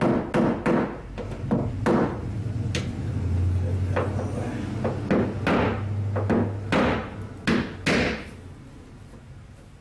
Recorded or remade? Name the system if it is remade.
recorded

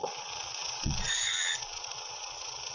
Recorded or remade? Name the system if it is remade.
remade, vocoder, Vocos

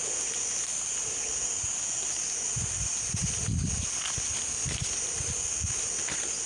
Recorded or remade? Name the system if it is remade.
recorded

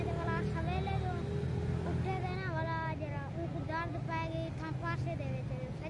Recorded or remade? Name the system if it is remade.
recorded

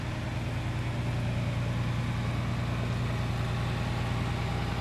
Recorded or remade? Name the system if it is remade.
recorded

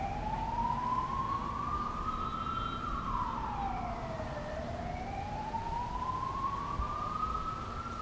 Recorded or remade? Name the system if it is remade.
recorded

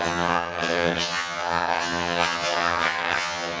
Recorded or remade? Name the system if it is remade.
remade, vocoder, HiFi-GAN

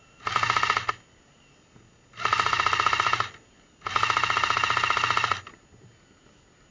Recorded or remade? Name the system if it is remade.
recorded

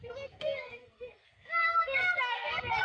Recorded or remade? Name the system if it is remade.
remade, codec, SNAC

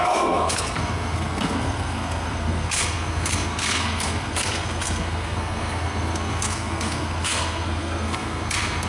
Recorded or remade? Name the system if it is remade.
remade, codec, SNAC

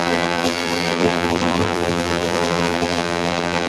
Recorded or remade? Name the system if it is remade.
remade, vocoder, BigVGAN v2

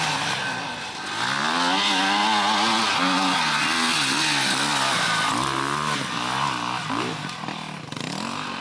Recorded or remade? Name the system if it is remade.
recorded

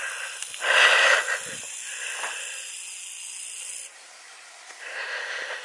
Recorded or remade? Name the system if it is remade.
recorded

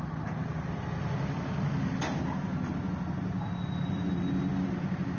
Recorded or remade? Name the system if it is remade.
recorded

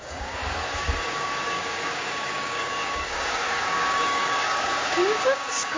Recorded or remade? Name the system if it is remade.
remade, codec, DAC